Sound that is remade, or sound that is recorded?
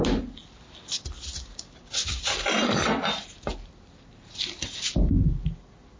recorded